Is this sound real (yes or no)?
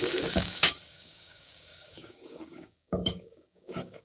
no